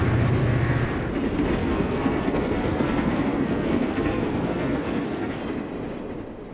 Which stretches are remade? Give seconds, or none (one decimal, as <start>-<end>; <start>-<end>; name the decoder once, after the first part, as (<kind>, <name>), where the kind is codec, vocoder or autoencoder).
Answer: 0.4-0.9 (codec, SNAC); 1.6-5.4